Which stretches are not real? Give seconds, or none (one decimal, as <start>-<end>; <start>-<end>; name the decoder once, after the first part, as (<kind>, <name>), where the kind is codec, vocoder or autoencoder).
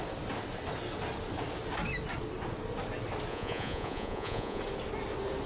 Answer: 3.3-4.6 (vocoder, Vocos)